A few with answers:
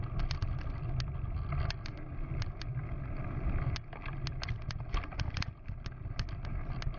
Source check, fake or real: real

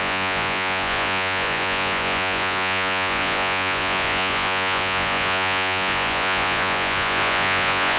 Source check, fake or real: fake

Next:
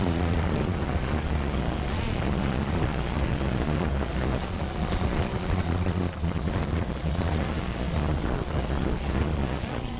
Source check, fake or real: fake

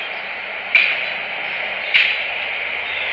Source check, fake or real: real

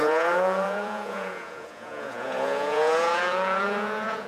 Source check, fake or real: fake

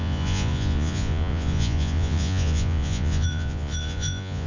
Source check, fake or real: fake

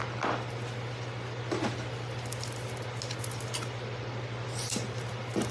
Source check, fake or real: real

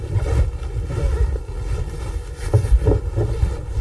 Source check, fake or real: real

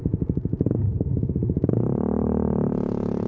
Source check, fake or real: real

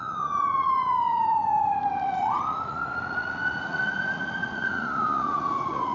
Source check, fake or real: fake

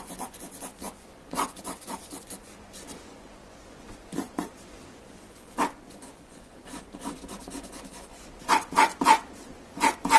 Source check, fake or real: fake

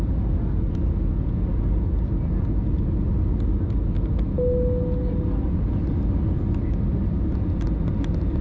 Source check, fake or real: real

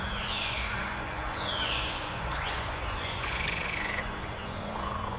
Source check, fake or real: fake